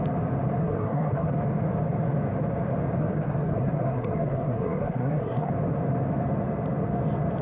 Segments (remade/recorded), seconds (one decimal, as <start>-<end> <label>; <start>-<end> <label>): 0.0-0.6 recorded; 0.6-1.3 remade; 1.3-3.0 recorded; 3.0-5.5 remade; 5.5-7.4 recorded